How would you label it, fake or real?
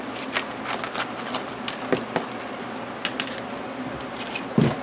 real